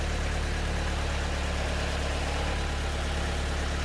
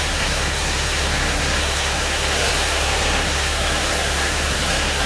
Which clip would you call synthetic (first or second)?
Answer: second